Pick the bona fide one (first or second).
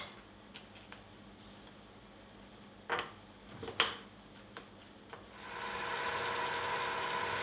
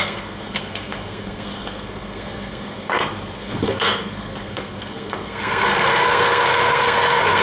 first